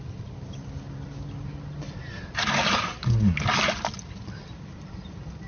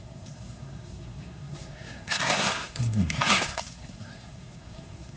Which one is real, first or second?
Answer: first